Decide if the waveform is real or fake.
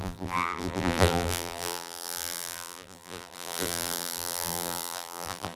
fake